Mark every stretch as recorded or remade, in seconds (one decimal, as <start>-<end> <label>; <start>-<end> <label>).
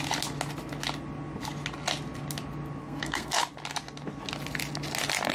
0.0-2.8 recorded; 2.8-3.4 remade; 3.4-5.3 recorded